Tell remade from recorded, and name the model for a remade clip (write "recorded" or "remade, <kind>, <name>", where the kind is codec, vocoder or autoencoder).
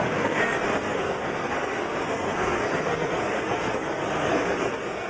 remade, codec, SNAC